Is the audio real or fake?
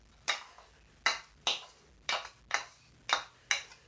real